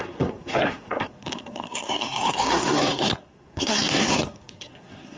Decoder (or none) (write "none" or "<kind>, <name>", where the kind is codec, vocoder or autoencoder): codec, SNAC